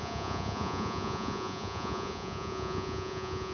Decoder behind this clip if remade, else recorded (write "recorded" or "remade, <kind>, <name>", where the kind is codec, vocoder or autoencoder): remade, vocoder, Vocos